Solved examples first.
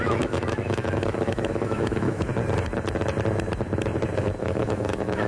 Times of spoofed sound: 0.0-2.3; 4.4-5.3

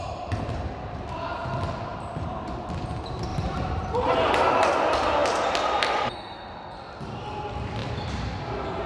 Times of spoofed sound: 1.9-2.5; 3.3-4.4

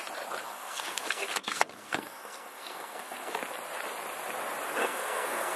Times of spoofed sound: 0.4-3.4; 4.8-5.6

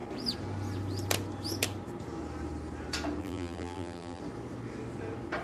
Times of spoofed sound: 3.2-4.2

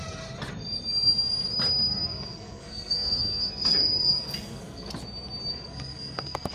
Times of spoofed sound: 1.9-4.9; 5.5-6.5